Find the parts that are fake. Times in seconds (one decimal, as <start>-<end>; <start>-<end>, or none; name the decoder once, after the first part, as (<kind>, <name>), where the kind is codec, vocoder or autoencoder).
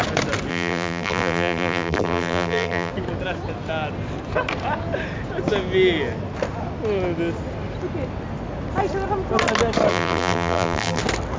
0.5-2.9 (vocoder, BigVGAN v2); 9.9-11.0